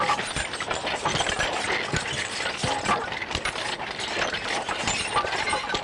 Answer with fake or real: real